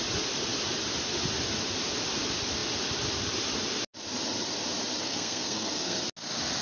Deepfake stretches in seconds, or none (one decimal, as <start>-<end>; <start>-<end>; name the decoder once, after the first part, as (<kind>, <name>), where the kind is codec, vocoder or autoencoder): 5.0-6.0 (codec, SNAC)